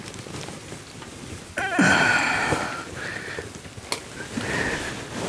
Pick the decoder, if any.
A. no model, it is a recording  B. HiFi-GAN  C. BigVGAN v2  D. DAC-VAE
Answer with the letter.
A